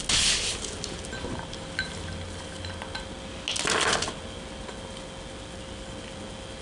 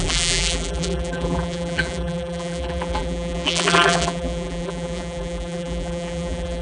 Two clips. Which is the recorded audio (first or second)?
first